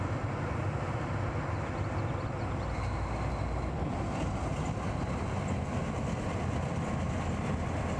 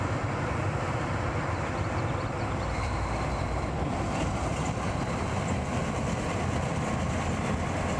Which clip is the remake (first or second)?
second